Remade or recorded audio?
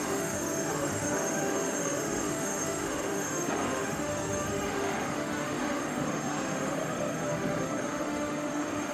remade